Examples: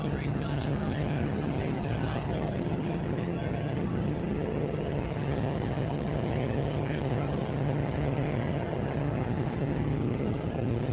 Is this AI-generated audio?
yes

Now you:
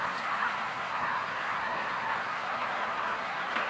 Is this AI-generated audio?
yes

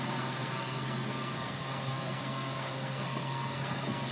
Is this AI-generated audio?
yes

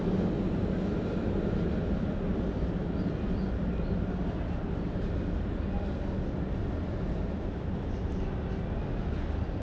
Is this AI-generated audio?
no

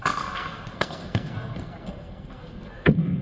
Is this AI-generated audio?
yes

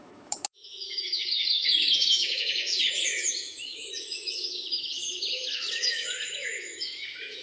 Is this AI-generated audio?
yes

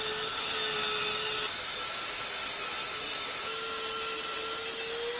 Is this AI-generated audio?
no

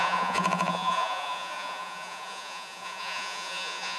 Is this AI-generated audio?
yes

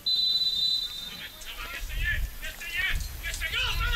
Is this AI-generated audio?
no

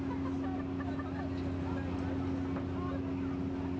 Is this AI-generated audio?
no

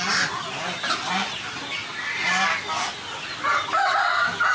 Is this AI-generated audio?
no